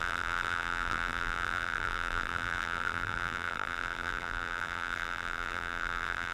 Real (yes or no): no